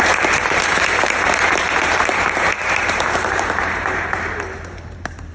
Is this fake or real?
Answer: fake